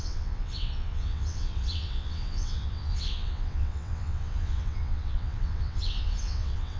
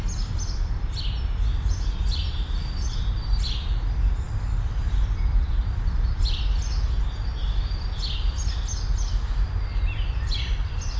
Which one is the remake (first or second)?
first